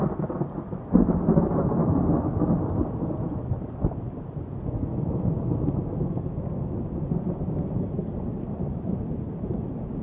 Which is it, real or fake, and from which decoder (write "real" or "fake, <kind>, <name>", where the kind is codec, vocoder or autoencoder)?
real